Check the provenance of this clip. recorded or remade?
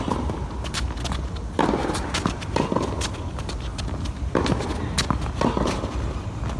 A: recorded